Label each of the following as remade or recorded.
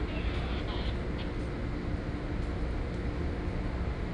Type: recorded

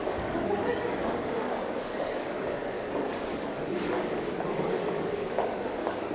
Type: remade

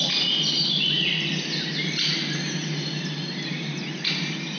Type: recorded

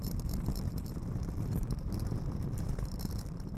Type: remade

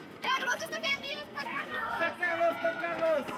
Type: remade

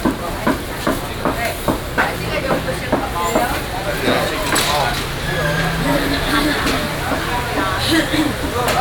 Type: recorded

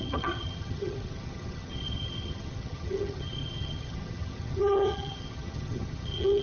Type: remade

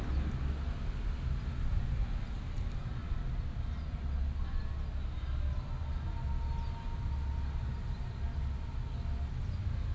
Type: recorded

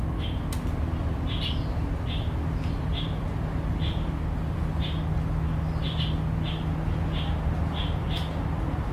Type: recorded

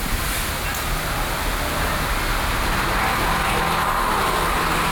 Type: recorded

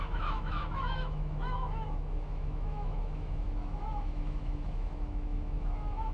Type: remade